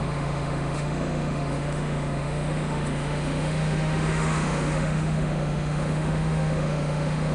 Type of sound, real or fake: fake